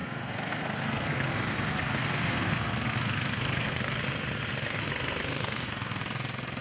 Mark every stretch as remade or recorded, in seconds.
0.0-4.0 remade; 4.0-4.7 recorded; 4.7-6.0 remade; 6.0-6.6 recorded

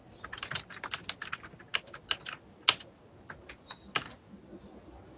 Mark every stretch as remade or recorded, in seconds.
0.0-5.2 recorded